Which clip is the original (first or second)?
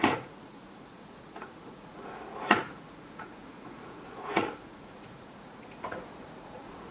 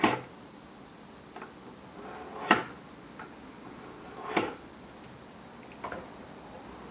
second